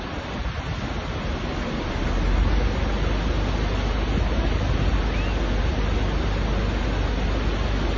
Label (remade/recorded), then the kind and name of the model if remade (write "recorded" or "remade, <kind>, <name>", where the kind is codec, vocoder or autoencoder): recorded